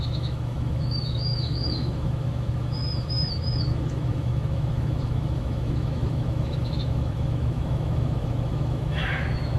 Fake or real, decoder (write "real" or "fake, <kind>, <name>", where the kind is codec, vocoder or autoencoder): fake, autoencoder, DAC-VAE